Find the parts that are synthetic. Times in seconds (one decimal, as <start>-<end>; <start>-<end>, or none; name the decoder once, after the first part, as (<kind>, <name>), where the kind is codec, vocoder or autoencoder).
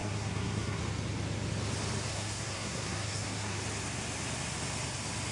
0.0-0.8 (codec, SNAC); 2.1-3.6